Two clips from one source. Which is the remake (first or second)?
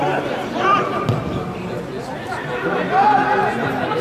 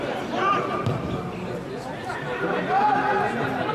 second